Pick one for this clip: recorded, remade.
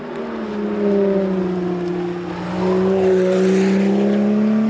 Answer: recorded